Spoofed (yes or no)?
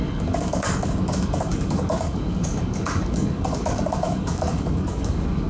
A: yes